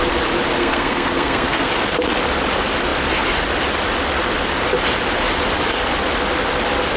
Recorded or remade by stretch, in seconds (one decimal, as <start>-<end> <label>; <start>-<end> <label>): 0.0-0.6 recorded; 0.6-1.7 remade; 1.7-7.0 recorded